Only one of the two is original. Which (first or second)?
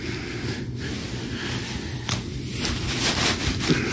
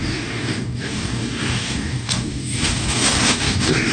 first